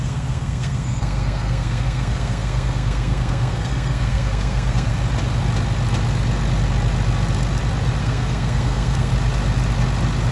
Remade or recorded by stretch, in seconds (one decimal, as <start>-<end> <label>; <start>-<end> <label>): 0.0-4.9 remade; 4.9-8.0 recorded; 8.0-9.1 remade; 9.1-10.3 recorded